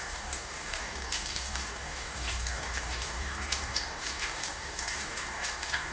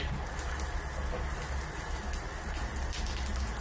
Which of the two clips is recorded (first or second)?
second